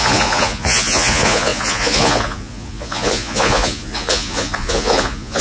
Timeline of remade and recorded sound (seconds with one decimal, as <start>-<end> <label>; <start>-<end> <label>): 0.0-5.4 remade